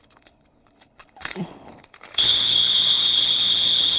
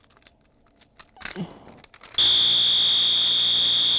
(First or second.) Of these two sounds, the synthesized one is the first